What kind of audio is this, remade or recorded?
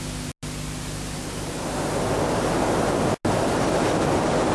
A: recorded